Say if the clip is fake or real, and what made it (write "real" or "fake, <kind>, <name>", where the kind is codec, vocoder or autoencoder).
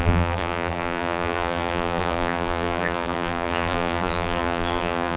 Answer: fake, vocoder, BigVGAN v2